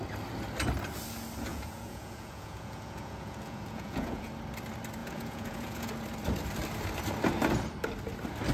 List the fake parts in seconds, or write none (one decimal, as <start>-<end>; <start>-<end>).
1.5-4.3; 5.0-5.9

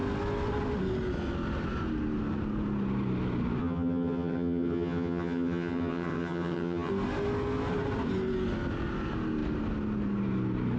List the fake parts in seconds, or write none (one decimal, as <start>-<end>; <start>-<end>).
3.6-6.9

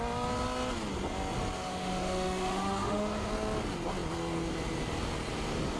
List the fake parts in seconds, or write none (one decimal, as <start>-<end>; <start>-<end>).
1.6-3.3